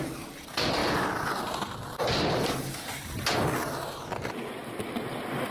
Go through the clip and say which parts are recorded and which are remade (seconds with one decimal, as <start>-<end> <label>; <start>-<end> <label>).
0.0-5.5 recorded